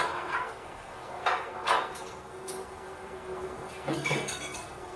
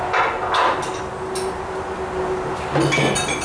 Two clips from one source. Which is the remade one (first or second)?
first